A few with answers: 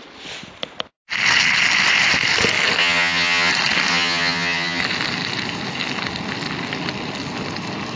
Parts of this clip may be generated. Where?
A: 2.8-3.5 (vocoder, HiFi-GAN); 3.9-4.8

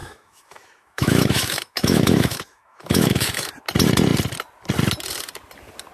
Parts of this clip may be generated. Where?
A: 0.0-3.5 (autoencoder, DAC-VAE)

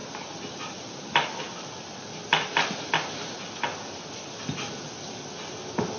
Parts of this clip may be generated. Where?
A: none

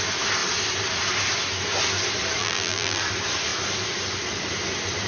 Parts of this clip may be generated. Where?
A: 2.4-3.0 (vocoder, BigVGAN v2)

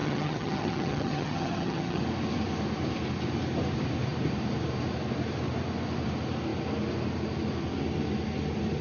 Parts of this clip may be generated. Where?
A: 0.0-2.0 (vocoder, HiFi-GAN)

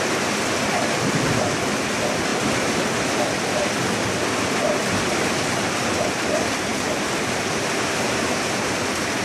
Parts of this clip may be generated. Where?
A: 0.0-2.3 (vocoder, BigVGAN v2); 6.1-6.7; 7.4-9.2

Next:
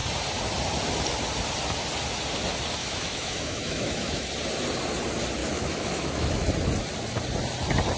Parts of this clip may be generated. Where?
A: 2.8-4.3 (autoencoder, DAC-VAE); 5.4-6.5